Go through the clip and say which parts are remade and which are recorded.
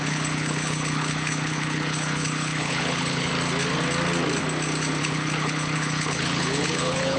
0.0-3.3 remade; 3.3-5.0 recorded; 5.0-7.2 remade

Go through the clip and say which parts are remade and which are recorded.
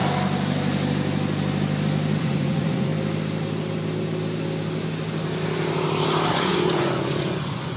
0.0-2.2 recorded; 2.2-2.9 remade; 2.9-6.3 recorded; 6.3-7.8 remade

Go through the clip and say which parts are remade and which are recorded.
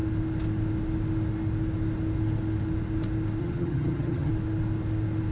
0.0-3.4 recorded; 3.4-4.3 remade; 4.3-5.3 recorded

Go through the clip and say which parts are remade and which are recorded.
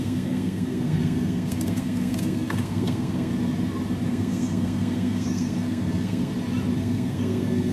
0.0-3.3 remade; 3.3-4.1 recorded; 4.1-6.3 remade; 6.3-6.8 recorded; 6.8-7.7 remade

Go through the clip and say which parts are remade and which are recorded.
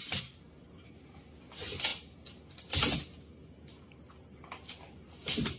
0.0-5.6 recorded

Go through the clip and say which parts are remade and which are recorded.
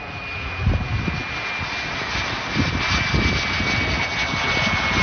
0.0-5.0 recorded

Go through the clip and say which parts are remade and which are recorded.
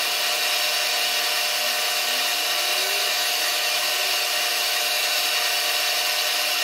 0.0-2.8 recorded; 2.8-3.9 remade; 3.9-4.5 recorded; 4.5-5.2 remade; 5.2-6.6 recorded